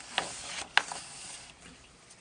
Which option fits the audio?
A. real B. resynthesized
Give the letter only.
A